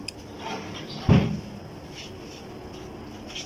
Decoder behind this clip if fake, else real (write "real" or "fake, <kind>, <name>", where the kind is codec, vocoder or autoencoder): real